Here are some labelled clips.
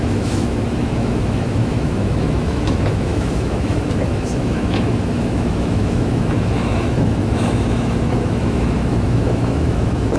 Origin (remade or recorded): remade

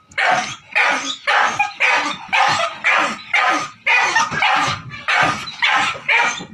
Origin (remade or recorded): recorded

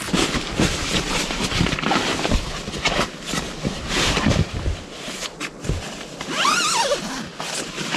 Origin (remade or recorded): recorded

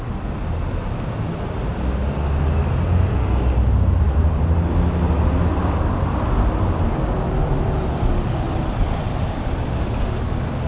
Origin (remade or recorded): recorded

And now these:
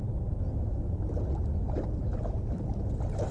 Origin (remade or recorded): recorded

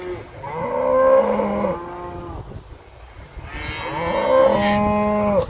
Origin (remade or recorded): recorded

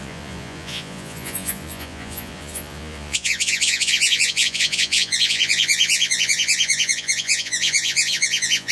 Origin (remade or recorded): remade